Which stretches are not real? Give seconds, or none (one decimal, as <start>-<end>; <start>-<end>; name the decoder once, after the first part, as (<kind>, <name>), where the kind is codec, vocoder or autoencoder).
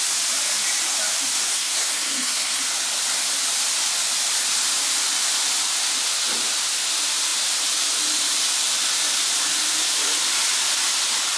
1.5-2.6 (codec, SNAC)